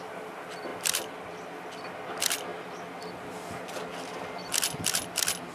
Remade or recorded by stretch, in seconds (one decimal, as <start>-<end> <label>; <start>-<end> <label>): 0.0-5.5 recorded